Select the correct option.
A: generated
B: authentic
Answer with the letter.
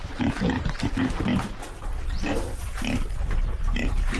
B